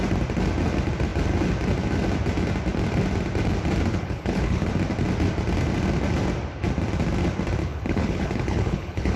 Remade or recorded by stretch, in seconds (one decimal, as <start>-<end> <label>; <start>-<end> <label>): 0.0-3.9 recorded; 3.9-4.7 remade; 4.7-7.6 recorded; 7.6-9.2 remade